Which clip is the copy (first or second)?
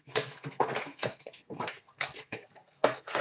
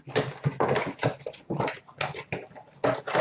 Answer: first